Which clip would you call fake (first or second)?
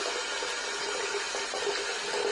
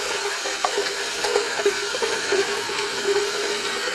second